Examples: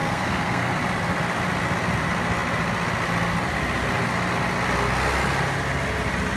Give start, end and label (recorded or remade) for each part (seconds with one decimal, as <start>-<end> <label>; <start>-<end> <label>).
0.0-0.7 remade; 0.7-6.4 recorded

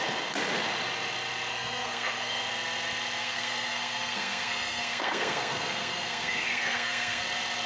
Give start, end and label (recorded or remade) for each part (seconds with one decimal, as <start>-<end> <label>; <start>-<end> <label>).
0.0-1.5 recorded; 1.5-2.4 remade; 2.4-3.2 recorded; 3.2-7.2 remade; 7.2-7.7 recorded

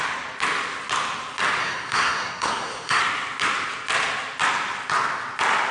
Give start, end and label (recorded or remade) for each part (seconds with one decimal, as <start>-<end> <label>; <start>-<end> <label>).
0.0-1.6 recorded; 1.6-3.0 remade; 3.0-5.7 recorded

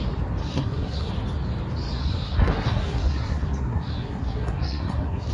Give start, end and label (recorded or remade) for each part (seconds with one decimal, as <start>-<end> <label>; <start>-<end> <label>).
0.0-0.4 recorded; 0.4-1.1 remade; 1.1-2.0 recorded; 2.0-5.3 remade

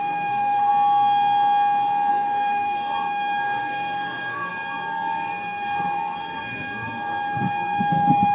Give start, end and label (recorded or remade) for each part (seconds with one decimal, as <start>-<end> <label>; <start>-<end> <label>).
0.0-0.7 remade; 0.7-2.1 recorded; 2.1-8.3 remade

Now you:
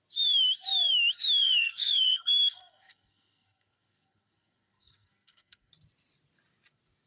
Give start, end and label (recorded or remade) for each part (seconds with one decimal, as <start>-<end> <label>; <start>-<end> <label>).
0.0-1.4 recorded; 1.4-5.7 remade; 5.7-7.1 recorded